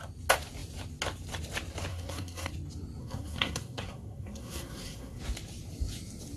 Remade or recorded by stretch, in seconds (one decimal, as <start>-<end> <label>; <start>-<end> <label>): 0.0-1.9 recorded; 1.9-2.5 remade; 2.5-3.0 recorded; 3.0-5.2 remade; 5.2-6.4 recorded